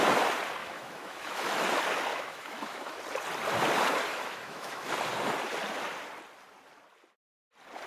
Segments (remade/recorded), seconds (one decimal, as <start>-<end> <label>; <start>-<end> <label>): 0.0-0.6 recorded; 0.6-1.7 remade; 1.7-2.1 recorded; 2.1-3.0 remade; 3.0-4.1 recorded; 4.1-4.9 remade; 4.9-7.9 recorded